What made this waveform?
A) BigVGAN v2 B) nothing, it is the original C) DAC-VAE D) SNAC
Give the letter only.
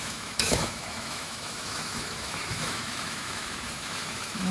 C